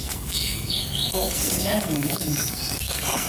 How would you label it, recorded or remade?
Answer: remade